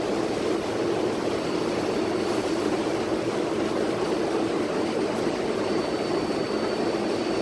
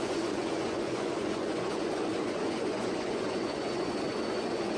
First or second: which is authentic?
first